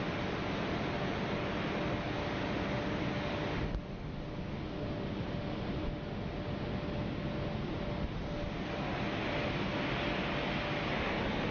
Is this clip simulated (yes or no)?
no